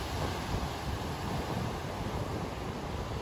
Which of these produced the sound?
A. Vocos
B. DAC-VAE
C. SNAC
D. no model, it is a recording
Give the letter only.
D